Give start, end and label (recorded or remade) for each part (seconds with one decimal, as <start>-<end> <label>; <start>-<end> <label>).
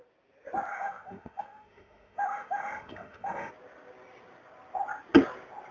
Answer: 0.0-0.7 recorded; 0.7-3.5 remade; 3.5-5.7 recorded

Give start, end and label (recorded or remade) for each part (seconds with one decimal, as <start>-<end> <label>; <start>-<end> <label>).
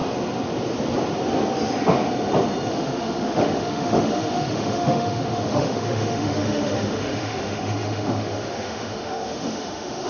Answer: 0.0-2.7 recorded; 2.7-10.1 remade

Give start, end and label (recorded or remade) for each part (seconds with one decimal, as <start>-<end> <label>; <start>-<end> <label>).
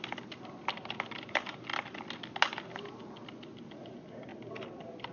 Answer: 0.0-5.1 recorded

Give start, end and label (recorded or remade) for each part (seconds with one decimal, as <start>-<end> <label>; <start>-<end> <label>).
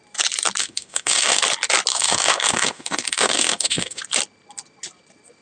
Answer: 0.0-0.6 recorded; 0.6-1.4 remade; 1.4-1.9 recorded; 1.9-4.0 remade; 4.0-5.4 recorded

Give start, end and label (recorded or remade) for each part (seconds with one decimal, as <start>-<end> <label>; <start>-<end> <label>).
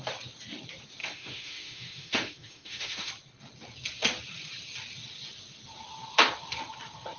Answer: 0.0-1.0 recorded; 1.0-3.1 remade; 3.1-7.2 recorded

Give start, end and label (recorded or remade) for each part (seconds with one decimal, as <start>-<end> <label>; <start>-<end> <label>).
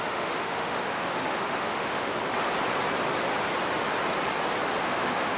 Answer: 0.0-2.2 remade; 2.2-4.8 recorded; 4.8-5.4 remade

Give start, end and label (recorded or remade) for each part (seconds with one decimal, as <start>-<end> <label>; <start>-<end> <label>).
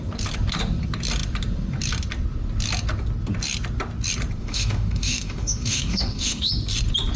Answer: 0.0-4.4 recorded; 4.4-6.5 remade; 6.5-7.2 recorded